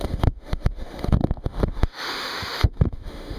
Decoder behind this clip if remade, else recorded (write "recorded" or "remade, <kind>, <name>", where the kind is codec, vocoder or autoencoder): remade, autoencoder, DAC-VAE